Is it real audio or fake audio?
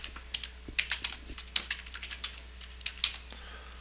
real